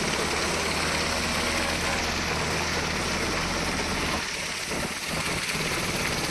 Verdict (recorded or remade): recorded